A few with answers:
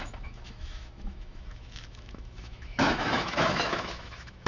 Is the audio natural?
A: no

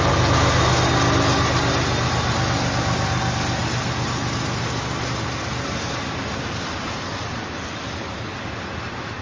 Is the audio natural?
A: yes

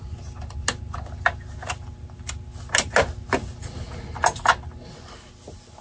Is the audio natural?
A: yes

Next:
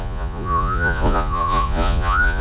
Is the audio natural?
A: no